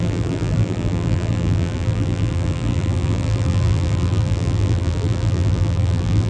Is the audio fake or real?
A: fake